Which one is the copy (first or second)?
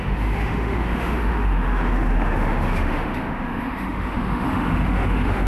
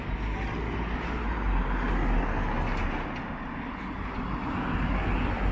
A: first